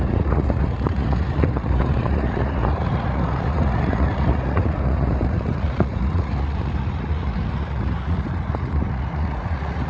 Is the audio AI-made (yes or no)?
yes